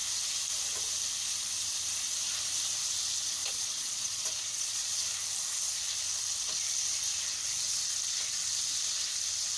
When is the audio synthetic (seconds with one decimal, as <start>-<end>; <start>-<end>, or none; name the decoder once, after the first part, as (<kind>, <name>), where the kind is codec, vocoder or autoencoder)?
3.4-5.1 (vocoder, Vocos)